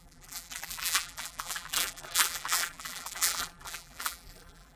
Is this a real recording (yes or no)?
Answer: no